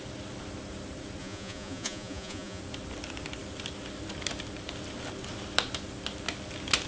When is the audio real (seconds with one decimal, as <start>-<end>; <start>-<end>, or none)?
0.0-1.2; 2.6-6.9